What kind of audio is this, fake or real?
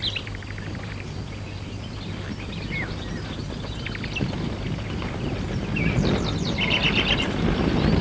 fake